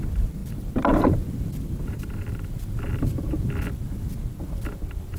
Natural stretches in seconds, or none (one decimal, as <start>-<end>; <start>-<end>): 0.0-0.4; 3.5-5.2

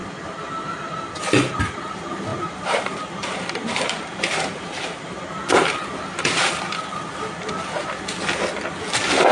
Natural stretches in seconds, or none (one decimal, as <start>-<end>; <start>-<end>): 0.0-2.3; 5.3-9.3

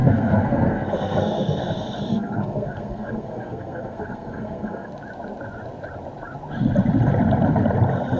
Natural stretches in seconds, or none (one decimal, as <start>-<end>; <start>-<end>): 4.9-8.2

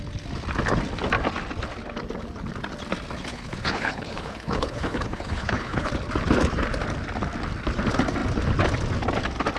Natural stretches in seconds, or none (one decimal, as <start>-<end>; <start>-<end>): 0.0-3.3; 5.9-9.6

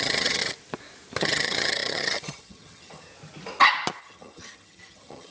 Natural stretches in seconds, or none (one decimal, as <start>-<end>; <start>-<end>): 0.4-1.2; 3.1-4.0

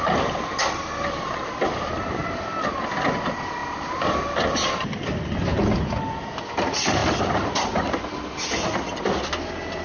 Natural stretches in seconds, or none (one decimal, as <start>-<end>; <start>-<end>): 0.0-9.8

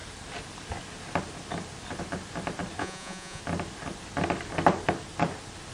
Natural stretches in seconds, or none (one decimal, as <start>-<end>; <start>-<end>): 0.0-2.8; 3.4-5.7

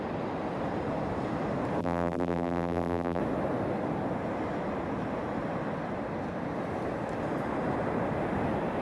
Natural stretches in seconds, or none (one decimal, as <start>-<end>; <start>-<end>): 0.0-1.8; 3.2-8.8